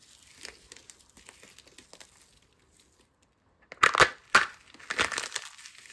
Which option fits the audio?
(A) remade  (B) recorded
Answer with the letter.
B